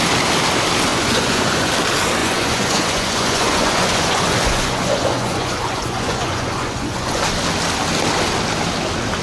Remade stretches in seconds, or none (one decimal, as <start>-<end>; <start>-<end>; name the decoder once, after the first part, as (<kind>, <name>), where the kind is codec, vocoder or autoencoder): 0.9-1.7 (vocoder, Vocos); 2.2-7.2